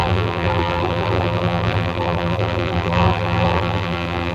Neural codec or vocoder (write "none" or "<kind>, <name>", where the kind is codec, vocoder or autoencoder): vocoder, BigVGAN v2